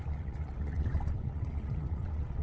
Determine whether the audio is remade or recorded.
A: remade